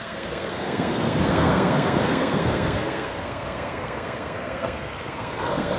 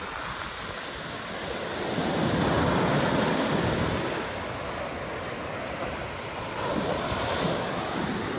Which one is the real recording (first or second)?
second